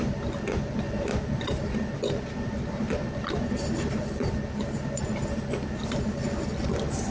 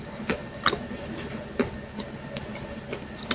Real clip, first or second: second